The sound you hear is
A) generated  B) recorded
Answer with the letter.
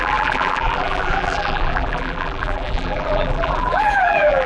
A